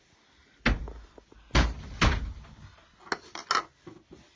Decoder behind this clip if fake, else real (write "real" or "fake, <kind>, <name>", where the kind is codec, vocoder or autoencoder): real